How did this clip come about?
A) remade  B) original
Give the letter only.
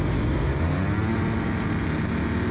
B